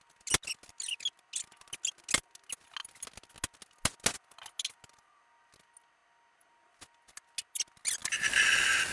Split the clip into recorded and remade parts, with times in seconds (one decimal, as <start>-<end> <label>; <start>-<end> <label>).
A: 0.0-8.9 recorded